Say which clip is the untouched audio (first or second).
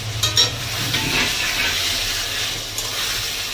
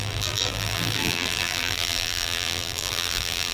first